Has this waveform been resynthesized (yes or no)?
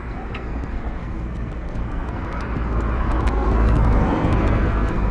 yes